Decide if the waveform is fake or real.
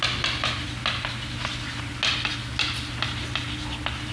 real